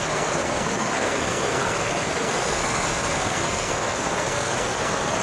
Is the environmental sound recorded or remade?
remade